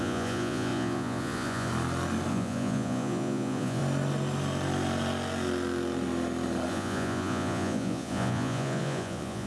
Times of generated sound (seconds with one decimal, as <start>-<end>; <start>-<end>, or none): 0.0-1.7; 2.3-3.8; 6.7-9.5